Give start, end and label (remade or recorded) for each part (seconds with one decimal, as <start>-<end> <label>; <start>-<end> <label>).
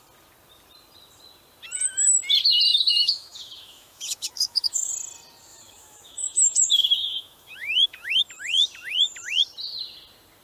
0.0-2.7 recorded; 2.7-4.9 remade; 4.9-5.5 recorded; 5.5-8.2 remade; 8.2-10.4 recorded